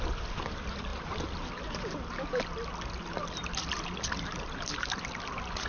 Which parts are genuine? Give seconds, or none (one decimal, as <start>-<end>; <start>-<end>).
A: 0.0-5.7